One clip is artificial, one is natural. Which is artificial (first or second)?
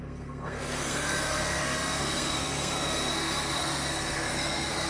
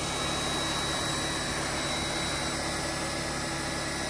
first